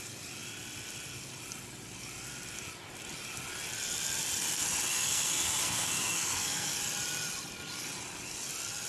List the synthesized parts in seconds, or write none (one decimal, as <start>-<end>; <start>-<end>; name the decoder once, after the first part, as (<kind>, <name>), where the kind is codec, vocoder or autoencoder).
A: 4.9-6.8 (codec, SNAC)